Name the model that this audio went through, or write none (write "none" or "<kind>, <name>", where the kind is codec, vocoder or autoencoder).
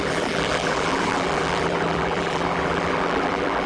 vocoder, BigVGAN v2